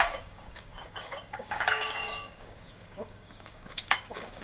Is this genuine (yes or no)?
no